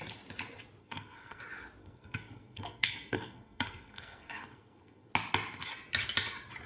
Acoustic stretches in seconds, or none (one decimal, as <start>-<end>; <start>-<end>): 0.0-0.8; 1.4-1.8; 5.1-6.7